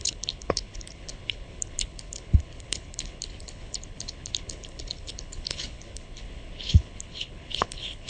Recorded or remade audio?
remade